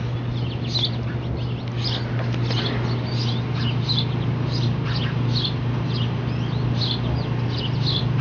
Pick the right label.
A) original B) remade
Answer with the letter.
A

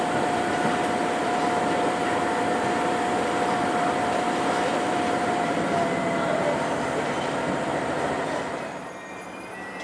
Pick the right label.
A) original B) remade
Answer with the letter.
B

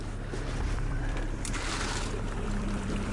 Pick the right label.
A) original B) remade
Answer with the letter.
B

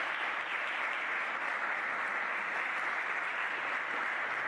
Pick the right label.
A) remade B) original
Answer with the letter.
A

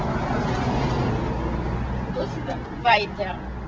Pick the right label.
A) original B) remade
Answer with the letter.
A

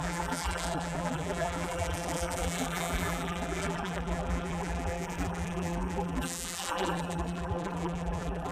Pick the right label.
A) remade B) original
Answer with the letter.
A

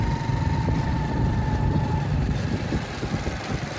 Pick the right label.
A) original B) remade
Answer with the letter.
B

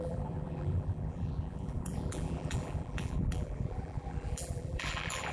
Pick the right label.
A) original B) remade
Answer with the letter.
B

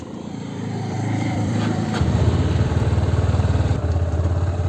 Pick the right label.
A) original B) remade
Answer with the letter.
B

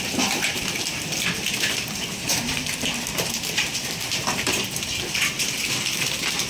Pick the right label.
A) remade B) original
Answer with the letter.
A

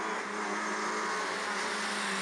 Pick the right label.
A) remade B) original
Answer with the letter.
B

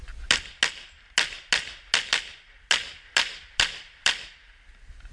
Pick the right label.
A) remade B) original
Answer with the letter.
B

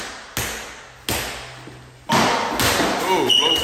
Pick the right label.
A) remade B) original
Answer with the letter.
B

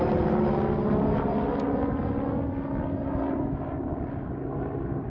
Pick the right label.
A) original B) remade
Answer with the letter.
A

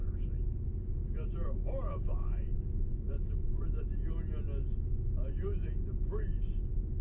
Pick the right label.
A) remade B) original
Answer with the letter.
B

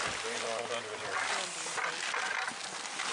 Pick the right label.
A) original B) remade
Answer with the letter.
A